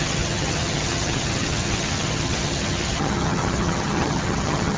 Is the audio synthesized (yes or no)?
yes